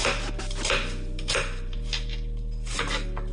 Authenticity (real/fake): real